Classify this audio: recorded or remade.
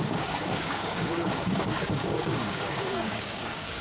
remade